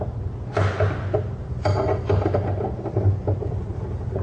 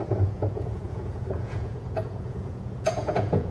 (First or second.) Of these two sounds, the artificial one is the second